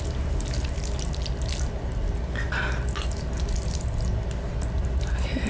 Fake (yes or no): no